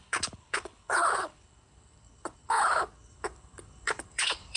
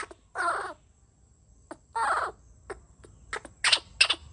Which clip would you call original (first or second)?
second